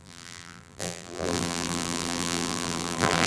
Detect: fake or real fake